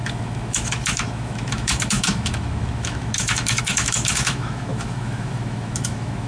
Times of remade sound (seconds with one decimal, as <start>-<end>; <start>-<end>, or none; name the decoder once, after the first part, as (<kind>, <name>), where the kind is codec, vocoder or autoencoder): 0.0-6.3 (autoencoder, DAC-VAE)